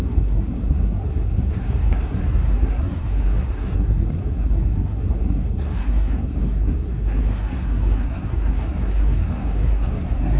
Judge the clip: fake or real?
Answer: fake